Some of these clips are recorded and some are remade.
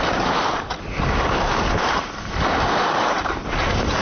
recorded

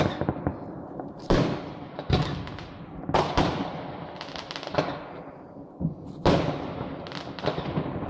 recorded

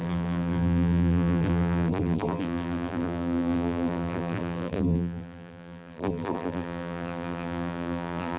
remade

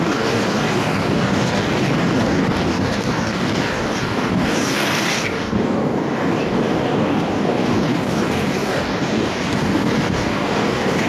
remade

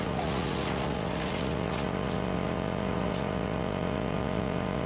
remade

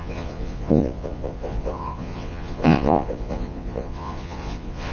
remade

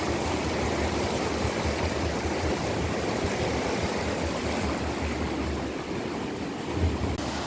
recorded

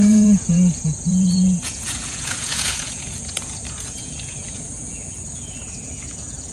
remade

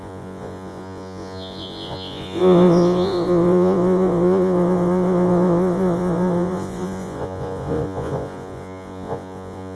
remade